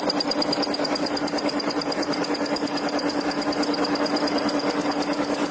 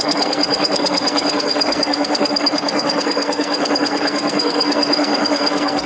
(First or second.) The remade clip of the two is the second